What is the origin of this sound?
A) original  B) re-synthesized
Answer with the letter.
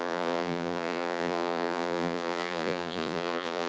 B